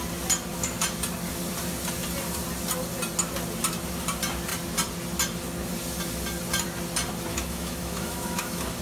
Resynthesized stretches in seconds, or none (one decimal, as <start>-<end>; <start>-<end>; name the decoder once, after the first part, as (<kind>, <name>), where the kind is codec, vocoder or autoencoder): 7.3-8.8 (autoencoder, DAC-VAE)